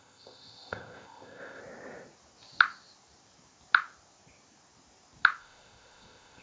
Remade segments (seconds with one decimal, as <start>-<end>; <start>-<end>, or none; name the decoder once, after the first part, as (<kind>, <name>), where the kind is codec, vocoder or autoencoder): 0.0-1.6 (codec, ZipCodec); 5.4-6.4